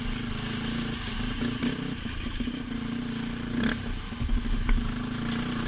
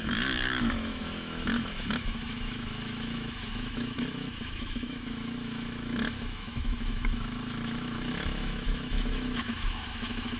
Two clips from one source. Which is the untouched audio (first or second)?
first